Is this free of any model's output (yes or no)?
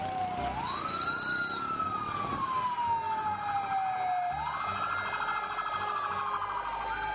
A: yes